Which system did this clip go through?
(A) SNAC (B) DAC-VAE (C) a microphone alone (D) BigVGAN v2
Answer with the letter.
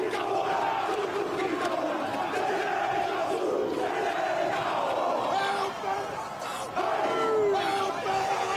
C